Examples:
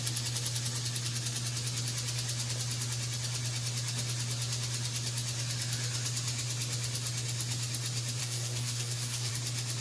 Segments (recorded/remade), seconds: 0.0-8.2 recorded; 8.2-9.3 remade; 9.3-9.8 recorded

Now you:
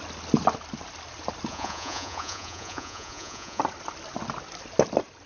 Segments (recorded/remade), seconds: 0.0-1.5 recorded; 1.5-3.6 remade; 3.6-5.3 recorded

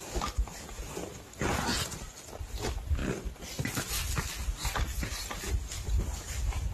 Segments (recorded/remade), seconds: 0.0-6.7 recorded

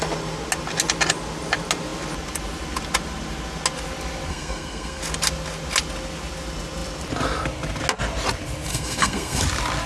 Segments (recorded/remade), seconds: 0.0-4.3 recorded; 4.3-5.0 remade; 5.0-8.7 recorded; 8.7-9.4 remade; 9.4-9.9 recorded

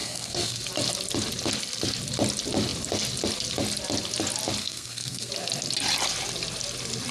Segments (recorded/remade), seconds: 0.0-0.6 remade; 0.6-4.6 recorded; 4.6-5.3 remade; 5.3-7.1 recorded

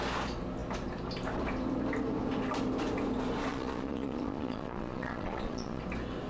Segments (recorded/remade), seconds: 0.0-3.5 recorded; 3.5-5.8 remade; 5.8-6.3 recorded